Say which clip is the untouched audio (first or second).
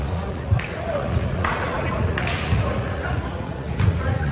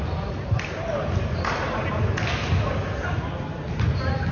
second